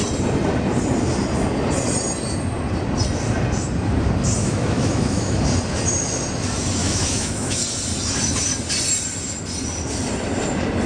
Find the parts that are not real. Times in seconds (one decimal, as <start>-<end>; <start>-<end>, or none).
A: 4.4-5.4; 6.8-7.6